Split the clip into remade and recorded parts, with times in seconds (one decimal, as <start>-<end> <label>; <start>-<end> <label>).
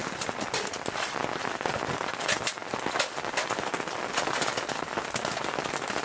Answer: 0.0-6.0 recorded